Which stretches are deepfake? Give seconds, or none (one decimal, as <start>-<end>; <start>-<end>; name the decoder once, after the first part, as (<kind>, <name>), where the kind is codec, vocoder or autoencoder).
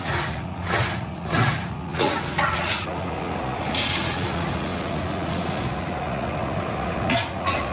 0.0-7.7 (vocoder, Vocos)